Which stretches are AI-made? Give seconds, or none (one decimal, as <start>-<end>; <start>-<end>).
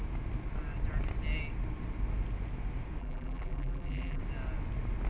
3.0-4.2